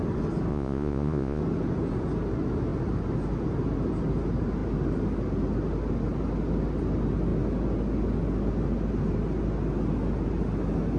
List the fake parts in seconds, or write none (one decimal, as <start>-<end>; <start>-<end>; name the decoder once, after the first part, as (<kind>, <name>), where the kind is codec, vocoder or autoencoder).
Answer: 0.5-1.4 (vocoder, Vocos)